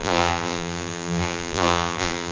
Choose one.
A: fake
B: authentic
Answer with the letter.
A